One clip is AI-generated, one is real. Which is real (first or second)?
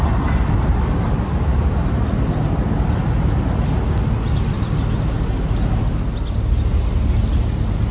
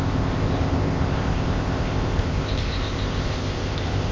first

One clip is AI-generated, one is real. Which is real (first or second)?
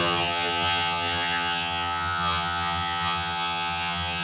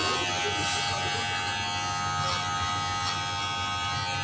second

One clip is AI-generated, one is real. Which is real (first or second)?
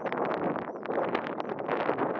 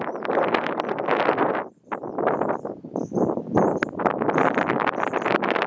first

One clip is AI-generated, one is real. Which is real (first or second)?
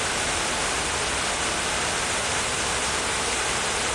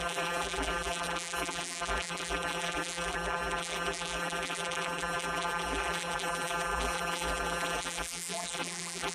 first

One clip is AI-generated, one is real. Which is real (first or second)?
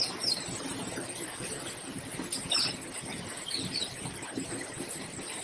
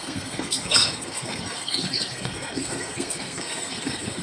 first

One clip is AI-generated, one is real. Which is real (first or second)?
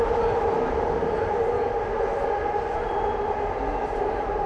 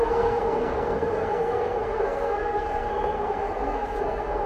first